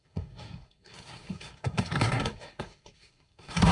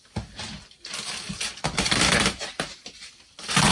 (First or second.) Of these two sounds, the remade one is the first